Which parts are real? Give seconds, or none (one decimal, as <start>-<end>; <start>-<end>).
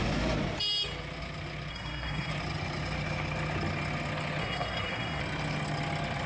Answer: 0.0-1.7; 2.3-4.4; 5.2-6.3